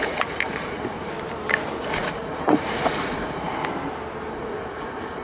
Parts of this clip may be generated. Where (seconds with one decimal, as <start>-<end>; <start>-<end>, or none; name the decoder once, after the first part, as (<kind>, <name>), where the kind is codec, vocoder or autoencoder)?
0.0-1.1 (vocoder, Vocos); 1.8-3.6; 4.3-5.2